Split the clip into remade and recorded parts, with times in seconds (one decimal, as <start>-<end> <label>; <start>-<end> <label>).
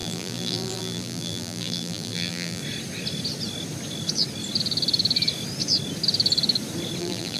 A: 0.0-2.6 remade; 2.6-7.0 recorded; 7.0-7.4 remade